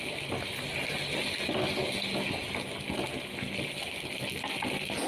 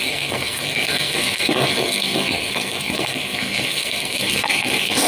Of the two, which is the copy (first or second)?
second